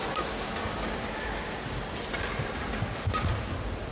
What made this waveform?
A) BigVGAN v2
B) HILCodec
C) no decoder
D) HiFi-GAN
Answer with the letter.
C